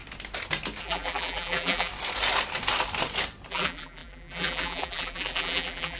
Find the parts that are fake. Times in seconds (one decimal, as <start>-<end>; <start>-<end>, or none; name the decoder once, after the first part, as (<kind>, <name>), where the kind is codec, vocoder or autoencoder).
0.8-1.9 (vocoder, BigVGAN v2); 3.5-6.0